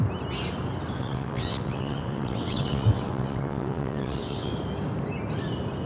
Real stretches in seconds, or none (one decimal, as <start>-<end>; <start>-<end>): 0.0-1.0; 4.5-5.9